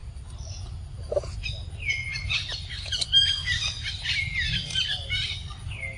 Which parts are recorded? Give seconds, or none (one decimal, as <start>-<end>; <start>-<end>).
0.0-6.0